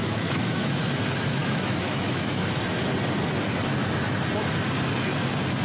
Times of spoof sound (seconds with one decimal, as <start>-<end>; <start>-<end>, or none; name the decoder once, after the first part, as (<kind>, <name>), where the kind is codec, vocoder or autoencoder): 0.0-0.8 (autoencoder, DAC-VAE); 1.4-2.6